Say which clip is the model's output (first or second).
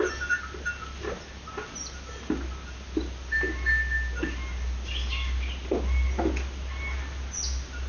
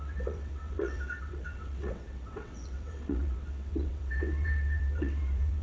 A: second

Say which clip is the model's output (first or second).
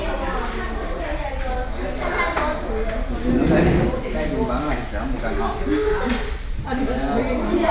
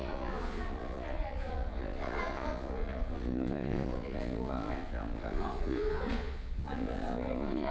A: second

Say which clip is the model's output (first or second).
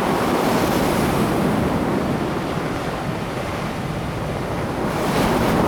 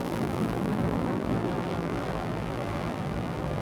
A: second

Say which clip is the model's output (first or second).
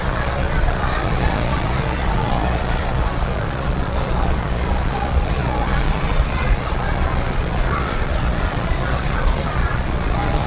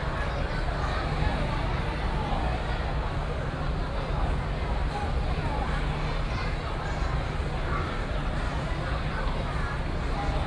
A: first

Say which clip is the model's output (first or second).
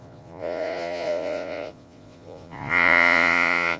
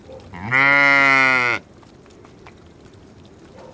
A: first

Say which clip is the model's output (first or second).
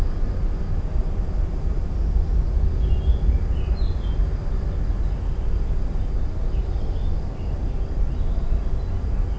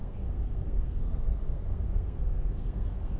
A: second